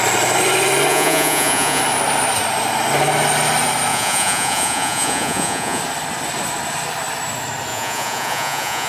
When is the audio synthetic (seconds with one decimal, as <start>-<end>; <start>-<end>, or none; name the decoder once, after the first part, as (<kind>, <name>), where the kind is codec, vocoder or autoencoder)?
0.9-1.8 (vocoder, Vocos); 3.9-5.8; 7.7-8.9